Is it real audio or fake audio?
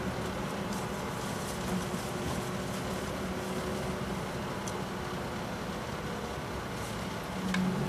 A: real